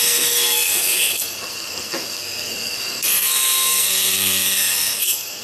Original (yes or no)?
no